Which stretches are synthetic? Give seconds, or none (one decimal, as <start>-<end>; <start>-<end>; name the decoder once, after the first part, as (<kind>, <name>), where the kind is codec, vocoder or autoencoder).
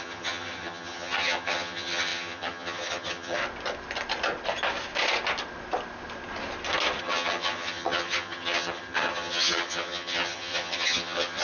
0.0-3.4 (vocoder, HiFi-GAN); 7.0-11.4